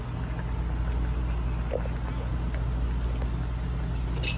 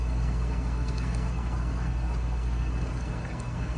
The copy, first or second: second